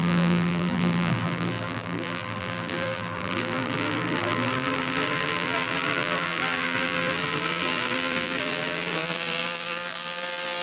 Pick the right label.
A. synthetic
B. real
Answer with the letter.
A